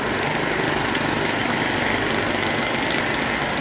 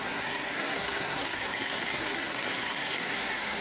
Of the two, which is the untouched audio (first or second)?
first